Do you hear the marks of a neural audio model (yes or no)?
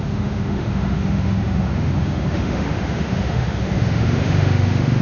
yes